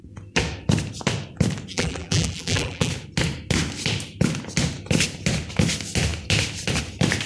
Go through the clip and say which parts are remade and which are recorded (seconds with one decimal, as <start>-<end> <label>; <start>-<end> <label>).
0.0-1.7 recorded; 1.7-2.9 remade; 2.9-7.3 recorded